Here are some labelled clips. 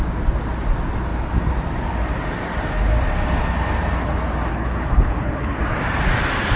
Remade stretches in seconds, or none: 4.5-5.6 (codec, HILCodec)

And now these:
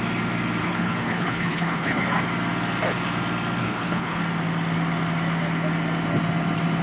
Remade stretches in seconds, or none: 0.6-2.0 (codec, HILCodec); 3.6-4.2

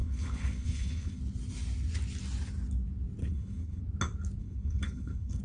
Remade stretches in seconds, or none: 0.0-1.2 (codec, HILCodec); 3.2-3.8; 4.4-5.4